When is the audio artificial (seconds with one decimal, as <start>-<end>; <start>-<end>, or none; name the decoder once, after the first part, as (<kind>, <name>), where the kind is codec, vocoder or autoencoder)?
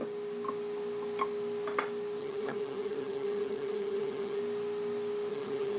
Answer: 2.2-4.4 (vocoder, HiFi-GAN); 5.3-5.8